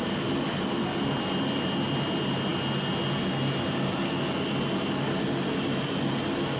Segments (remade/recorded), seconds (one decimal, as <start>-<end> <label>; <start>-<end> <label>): 0.0-6.6 recorded